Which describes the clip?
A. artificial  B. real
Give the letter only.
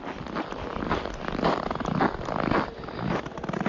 B